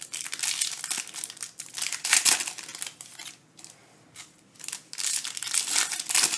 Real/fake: real